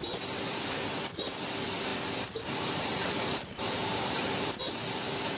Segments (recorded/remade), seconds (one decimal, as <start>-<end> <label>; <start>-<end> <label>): 0.0-1.9 recorded; 1.9-4.6 remade; 4.6-5.4 recorded